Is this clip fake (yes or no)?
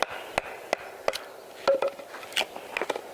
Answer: no